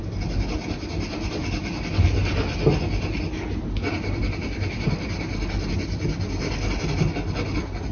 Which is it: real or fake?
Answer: real